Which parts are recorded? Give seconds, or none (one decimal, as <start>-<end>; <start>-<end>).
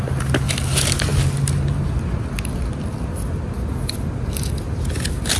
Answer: 0.0-5.4